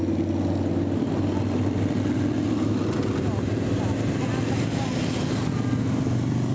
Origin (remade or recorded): recorded